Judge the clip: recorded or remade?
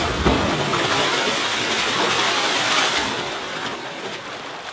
remade